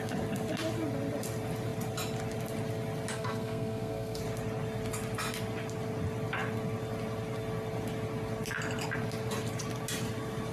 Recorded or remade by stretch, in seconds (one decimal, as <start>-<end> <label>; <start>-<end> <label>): 0.0-3.1 recorded; 3.1-4.2 remade; 4.2-10.5 recorded